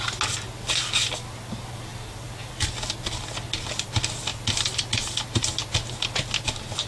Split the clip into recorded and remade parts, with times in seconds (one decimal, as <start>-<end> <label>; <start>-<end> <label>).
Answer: 0.0-6.9 recorded